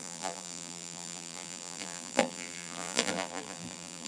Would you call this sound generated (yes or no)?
yes